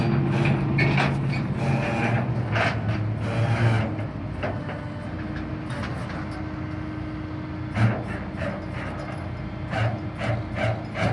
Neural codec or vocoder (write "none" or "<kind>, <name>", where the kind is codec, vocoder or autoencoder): none